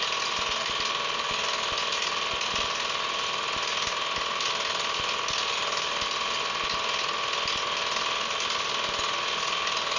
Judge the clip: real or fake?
real